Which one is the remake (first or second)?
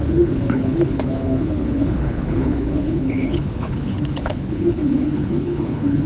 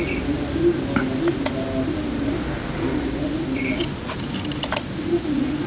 first